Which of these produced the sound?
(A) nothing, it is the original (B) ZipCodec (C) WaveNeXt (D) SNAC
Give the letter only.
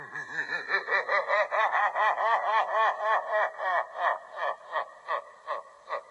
A